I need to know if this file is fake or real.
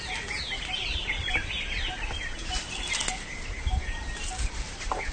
real